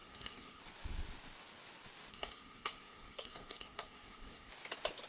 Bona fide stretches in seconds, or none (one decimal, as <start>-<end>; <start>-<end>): 0.6-2.1; 4.5-5.1